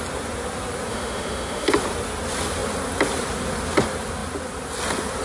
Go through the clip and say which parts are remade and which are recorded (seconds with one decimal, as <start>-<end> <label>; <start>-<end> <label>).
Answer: 0.0-0.9 recorded; 0.9-1.7 remade; 1.7-5.2 recorded